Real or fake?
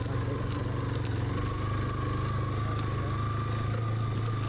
real